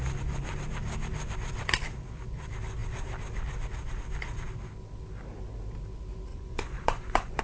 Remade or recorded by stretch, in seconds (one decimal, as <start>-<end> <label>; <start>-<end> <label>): 0.0-6.3 recorded; 6.3-7.4 remade